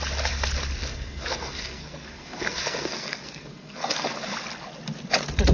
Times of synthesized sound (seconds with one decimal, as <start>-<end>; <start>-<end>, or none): 0.8-4.1